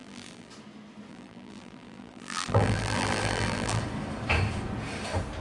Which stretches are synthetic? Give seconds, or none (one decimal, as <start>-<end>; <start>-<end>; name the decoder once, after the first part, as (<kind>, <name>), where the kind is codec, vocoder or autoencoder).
0.0-0.5 (vocoder, BigVGAN v2); 1.1-3.8